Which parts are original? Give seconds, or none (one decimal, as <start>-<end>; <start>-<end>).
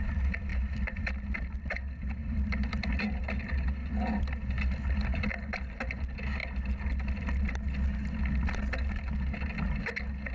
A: 0.0-0.5; 1.0-2.2; 2.9-10.3